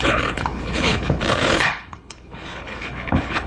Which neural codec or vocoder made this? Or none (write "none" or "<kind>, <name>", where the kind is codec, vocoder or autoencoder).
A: codec, HILCodec